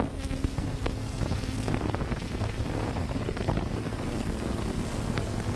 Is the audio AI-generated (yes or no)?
yes